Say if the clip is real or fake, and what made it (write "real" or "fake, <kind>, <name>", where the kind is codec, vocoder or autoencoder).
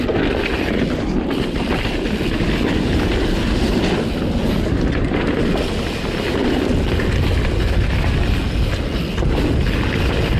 real